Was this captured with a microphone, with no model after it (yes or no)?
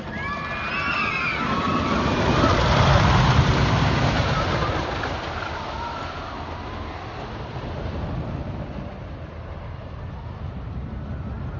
yes